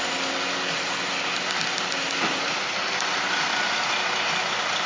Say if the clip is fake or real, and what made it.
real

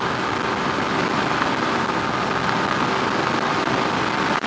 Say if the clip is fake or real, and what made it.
real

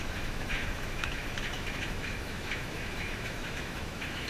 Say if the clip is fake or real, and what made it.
fake, autoencoder, DAC-VAE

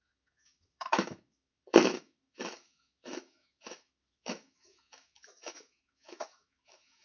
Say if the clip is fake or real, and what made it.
fake, autoencoder, DAC-VAE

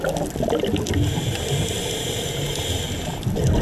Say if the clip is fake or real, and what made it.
real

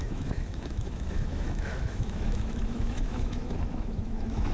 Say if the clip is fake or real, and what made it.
fake, autoencoder, DAC-VAE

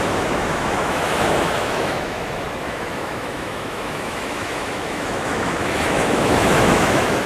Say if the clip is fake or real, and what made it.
fake, autoencoder, DAC-VAE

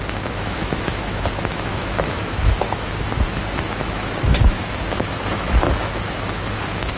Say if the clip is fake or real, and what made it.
fake, autoencoder, DAC-VAE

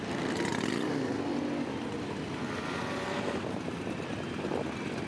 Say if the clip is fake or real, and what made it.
real